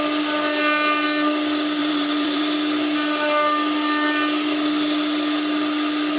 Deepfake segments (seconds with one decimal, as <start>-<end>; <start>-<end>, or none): 1.8-2.4